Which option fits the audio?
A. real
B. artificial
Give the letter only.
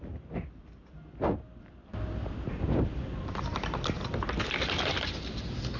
A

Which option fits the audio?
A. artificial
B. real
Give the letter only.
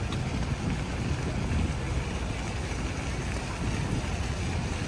B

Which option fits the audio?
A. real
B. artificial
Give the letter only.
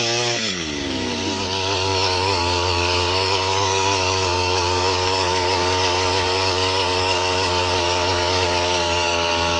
B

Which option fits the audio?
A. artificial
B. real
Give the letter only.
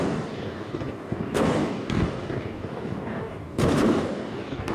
A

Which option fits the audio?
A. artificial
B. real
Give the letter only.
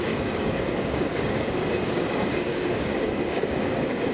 A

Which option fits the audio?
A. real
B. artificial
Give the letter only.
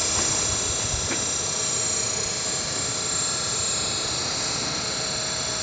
A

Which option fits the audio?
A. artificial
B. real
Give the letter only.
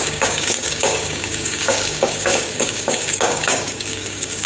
A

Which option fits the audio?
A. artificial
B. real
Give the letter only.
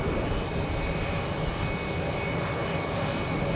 B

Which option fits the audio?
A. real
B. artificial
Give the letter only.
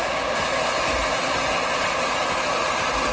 A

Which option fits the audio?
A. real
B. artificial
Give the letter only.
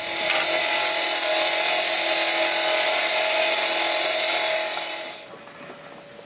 A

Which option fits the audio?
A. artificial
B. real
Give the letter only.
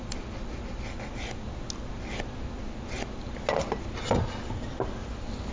B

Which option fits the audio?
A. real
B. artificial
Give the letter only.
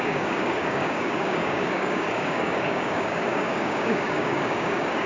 B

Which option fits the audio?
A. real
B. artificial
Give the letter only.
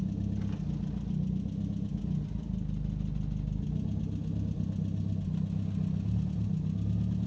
A